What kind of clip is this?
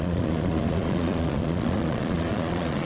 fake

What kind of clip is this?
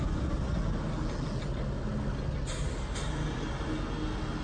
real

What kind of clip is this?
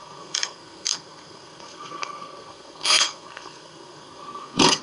fake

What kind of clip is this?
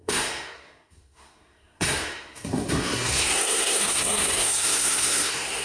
fake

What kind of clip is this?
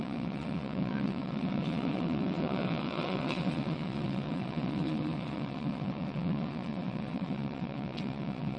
fake